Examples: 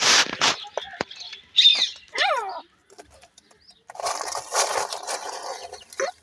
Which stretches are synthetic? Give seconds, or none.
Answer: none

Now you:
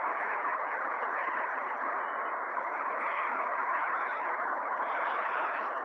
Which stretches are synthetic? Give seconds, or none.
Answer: 0.0-2.0 (codec, HILCodec); 2.5-5.8

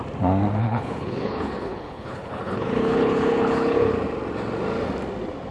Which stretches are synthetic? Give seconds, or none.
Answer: 0.6-3.9 (codec, HILCodec)

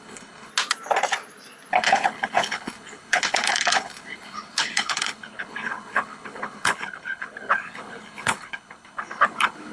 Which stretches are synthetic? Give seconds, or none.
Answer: 0.0-0.5 (codec, HILCodec); 1.7-9.7

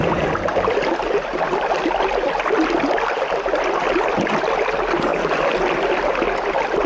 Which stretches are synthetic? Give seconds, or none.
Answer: none

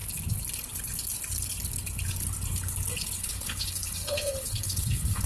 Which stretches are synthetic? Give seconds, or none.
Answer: 3.2-5.3 (codec, HILCodec)